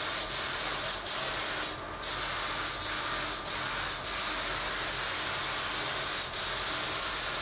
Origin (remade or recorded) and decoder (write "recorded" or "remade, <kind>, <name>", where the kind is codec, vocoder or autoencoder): recorded